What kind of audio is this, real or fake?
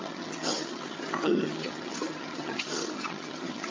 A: fake